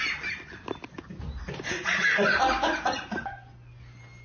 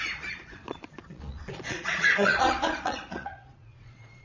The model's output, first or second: second